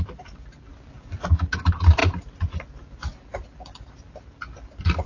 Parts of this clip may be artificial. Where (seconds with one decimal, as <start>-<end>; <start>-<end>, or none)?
none